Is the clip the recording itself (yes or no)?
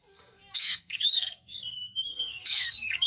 no